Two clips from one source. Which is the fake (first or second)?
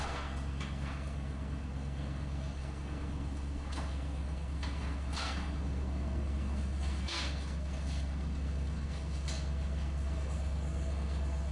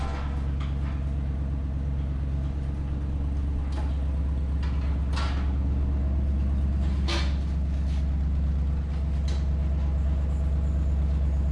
first